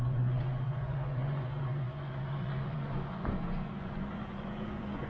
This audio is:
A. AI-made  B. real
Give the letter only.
A